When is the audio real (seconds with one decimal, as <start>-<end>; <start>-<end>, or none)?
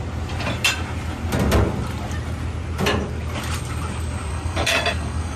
0.0-4.3